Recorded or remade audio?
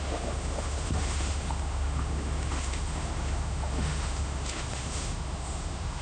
remade